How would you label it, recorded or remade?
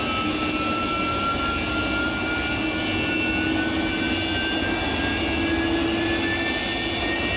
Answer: recorded